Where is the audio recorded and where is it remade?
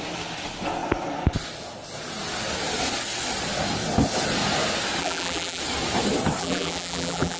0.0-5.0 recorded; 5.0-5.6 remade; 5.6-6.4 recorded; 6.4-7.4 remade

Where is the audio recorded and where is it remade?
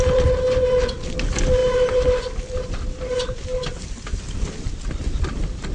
0.0-5.7 recorded